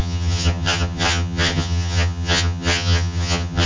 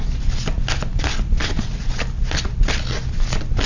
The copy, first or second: first